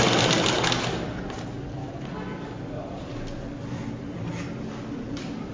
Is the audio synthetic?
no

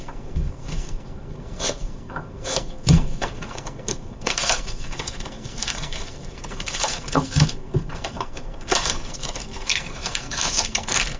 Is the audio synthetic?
yes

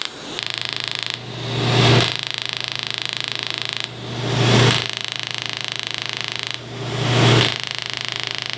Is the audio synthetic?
no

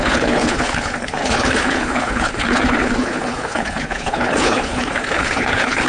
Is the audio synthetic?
yes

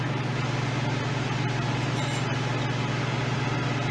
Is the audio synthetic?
no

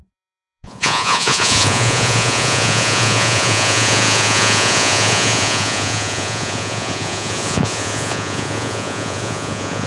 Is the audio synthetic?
yes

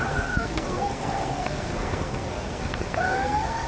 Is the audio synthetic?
yes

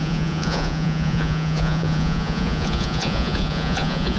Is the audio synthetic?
yes